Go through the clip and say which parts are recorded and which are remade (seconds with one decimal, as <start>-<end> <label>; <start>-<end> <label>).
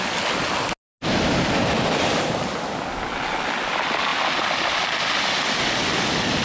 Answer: 0.0-6.4 recorded